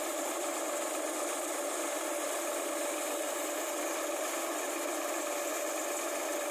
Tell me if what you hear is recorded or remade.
recorded